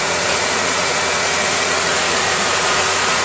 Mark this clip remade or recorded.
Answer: remade